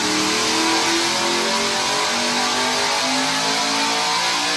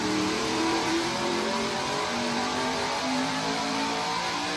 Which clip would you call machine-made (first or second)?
second